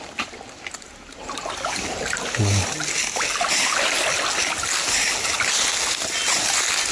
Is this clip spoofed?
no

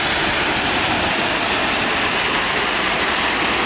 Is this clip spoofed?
no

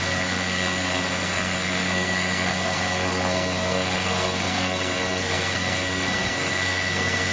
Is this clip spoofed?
yes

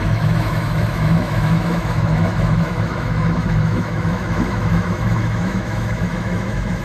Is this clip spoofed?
yes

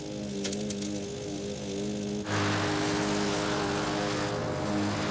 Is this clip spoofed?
no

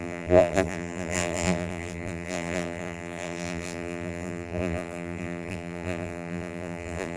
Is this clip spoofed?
yes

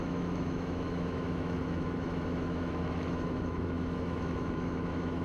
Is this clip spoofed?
yes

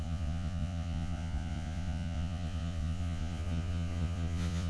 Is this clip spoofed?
yes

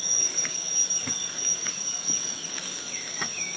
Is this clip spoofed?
yes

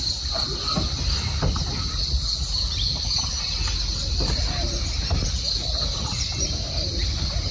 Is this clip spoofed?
no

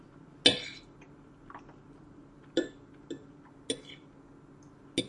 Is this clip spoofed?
no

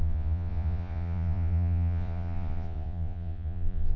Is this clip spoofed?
yes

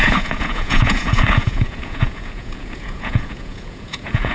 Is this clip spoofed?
yes